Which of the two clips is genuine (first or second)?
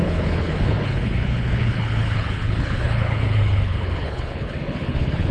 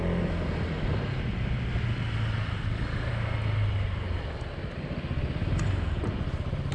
second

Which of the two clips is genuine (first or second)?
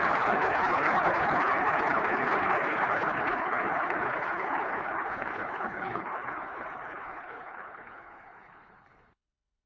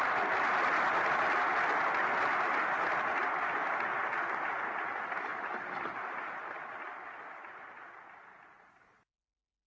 second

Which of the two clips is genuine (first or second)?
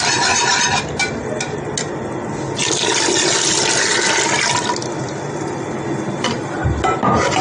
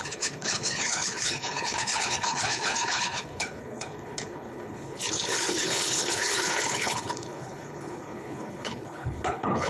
first